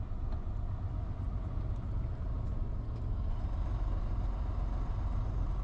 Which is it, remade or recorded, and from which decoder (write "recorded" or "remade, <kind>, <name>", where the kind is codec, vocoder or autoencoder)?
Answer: recorded